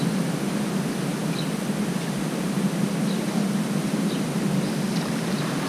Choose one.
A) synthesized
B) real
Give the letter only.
B